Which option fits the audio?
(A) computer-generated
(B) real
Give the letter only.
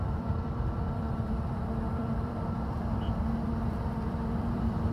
A